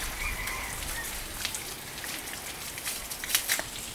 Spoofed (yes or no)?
no